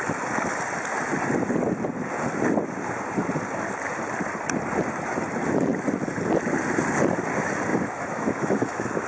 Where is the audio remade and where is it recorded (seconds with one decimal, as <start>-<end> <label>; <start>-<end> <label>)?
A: 0.0-7.7 recorded; 7.7-9.1 remade